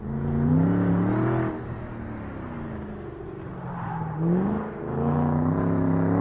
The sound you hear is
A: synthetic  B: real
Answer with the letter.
B